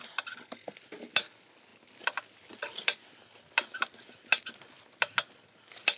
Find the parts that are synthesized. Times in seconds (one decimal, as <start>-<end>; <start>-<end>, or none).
none